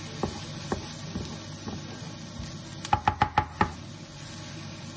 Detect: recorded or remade recorded